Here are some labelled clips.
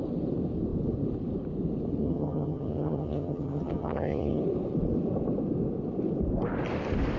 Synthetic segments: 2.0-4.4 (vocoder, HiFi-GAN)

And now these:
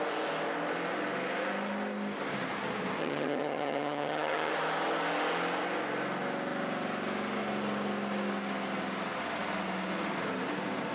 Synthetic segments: 3.0-4.5 (vocoder, HiFi-GAN)

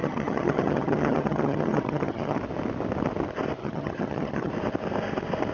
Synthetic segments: 0.0-2.4 (vocoder, HiFi-GAN); 3.6-4.5

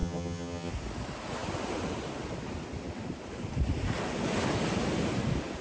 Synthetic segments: 0.0-0.7 (vocoder, HiFi-GAN)

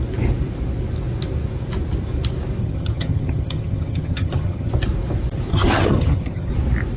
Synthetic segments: 2.6-4.7 (vocoder, HiFi-GAN); 5.5-6.5